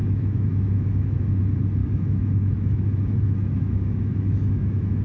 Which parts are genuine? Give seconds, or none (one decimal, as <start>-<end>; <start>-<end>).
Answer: 1.4-1.8